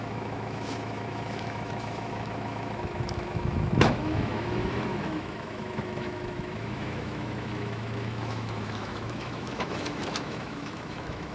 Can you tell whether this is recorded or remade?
remade